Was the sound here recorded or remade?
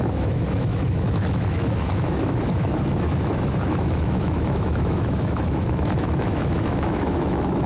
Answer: remade